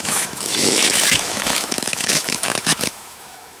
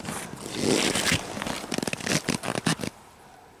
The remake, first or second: first